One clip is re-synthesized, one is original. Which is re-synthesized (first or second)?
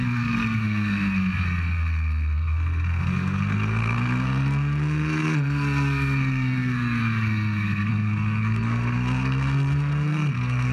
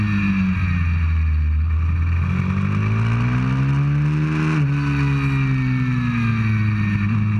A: first